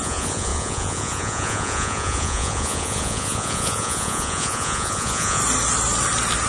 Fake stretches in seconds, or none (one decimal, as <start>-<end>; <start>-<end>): 0.0-5.4